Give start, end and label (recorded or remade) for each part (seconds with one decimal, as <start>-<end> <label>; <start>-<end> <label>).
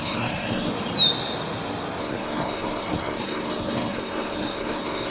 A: 0.0-0.7 remade; 0.7-2.0 recorded; 2.0-5.1 remade